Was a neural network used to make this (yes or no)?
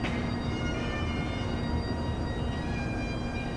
no